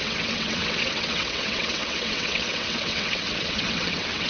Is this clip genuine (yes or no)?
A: no